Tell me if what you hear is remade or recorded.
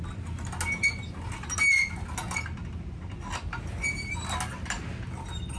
recorded